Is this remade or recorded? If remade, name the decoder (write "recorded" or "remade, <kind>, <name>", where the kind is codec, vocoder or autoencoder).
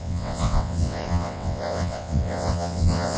remade, vocoder, WaveNeXt